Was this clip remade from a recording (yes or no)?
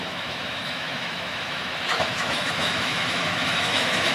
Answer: yes